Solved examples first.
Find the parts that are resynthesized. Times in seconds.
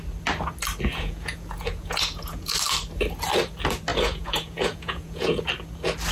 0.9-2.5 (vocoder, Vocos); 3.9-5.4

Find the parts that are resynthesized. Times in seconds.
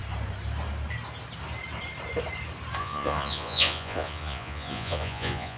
2.8-5.6 (vocoder, Vocos)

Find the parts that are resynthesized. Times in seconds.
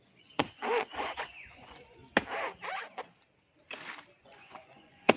0.0-2.0 (vocoder, Vocos); 4.2-5.2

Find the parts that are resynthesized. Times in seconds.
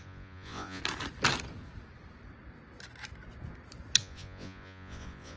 0.0-0.8 (vocoder, Vocos); 4.0-5.4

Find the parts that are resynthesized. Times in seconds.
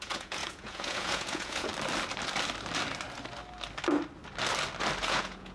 0.0-1.7 (vocoder, Vocos); 5.0-5.5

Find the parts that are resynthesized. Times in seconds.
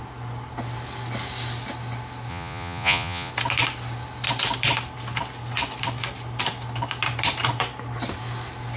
2.3-3.3 (vocoder, Vocos)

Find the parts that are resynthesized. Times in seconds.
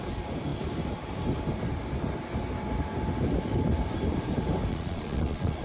4.7-5.6 (vocoder, Vocos)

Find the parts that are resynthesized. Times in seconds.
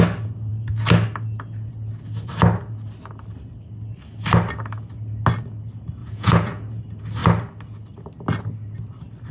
6.0-6.8 (vocoder, Vocos)